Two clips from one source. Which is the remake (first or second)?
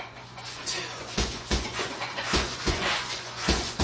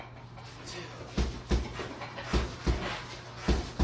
first